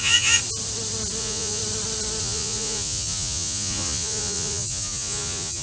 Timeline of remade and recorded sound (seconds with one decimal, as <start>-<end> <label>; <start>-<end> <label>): 0.0-0.4 remade; 0.4-1.2 recorded; 1.2-1.6 remade; 1.6-2.2 recorded; 2.2-5.6 remade